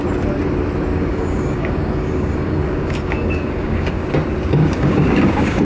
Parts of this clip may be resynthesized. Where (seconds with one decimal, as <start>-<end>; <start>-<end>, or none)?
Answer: 0.9-4.1; 4.6-5.6